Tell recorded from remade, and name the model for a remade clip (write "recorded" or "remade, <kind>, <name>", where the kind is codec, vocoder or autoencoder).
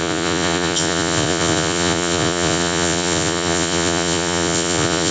remade, vocoder, Vocos